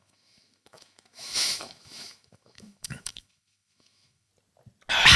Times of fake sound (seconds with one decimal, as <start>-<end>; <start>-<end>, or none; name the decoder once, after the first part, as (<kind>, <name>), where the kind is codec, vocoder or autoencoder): 0.0-4.3 (autoencoder, DAC-VAE)